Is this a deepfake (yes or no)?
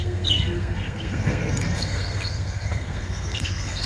yes